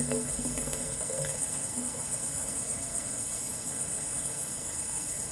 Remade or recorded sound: remade